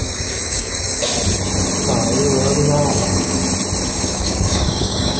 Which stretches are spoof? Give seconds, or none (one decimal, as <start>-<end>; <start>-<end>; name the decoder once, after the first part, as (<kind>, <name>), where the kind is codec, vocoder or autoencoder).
0.0-1.1 (codec, DAC); 2.9-3.4; 3.9-5.2